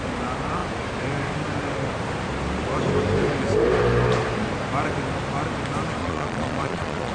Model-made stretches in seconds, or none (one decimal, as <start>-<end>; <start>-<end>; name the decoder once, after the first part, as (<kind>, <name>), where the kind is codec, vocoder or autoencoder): 6.0-7.1 (vocoder, Vocos)